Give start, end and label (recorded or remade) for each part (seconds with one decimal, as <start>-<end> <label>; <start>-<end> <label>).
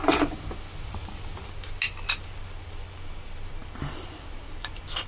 0.0-5.1 recorded